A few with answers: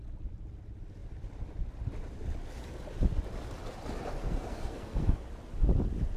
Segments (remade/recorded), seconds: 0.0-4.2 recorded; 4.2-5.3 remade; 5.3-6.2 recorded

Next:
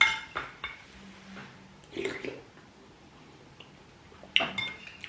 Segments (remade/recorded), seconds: 0.0-5.1 recorded